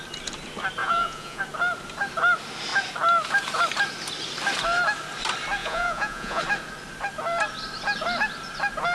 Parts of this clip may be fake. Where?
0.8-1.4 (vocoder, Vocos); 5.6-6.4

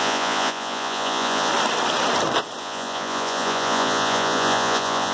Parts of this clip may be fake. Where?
0.0-1.5 (vocoder, Vocos); 2.6-5.1

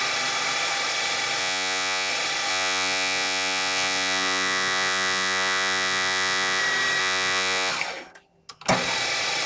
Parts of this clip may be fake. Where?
1.4-2.1 (vocoder, Vocos); 2.5-6.6; 7.0-7.7

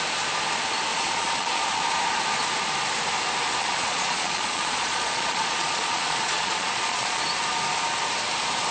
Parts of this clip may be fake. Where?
0.9-1.8 (vocoder, Vocos); 3.6-7.2

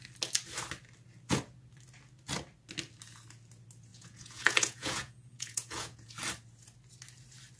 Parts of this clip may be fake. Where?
3.9-6.1 (vocoder, Vocos)

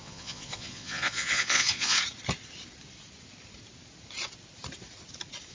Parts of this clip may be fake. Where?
0.0-2.0 (vocoder, Vocos)